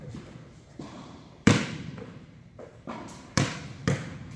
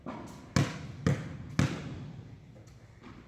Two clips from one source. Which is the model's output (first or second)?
first